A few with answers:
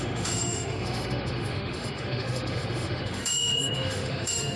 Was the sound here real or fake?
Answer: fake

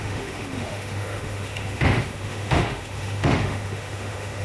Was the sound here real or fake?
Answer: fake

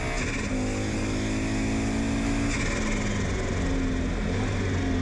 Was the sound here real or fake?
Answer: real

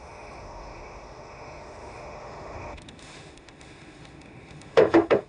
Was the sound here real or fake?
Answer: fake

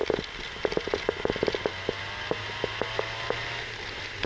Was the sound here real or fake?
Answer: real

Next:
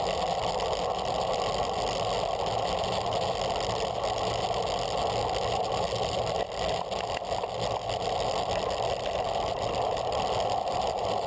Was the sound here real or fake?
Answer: real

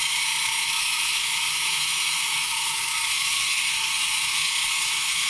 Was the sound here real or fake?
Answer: fake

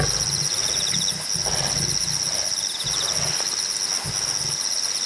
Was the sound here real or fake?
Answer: real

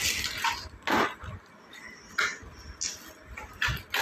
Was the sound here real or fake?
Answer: real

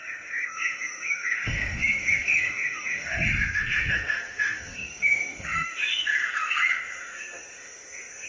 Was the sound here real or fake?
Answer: fake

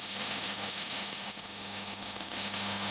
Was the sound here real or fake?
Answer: fake